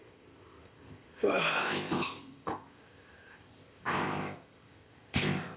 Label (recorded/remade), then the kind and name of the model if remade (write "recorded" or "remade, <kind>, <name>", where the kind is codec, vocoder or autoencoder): remade, codec, ZipCodec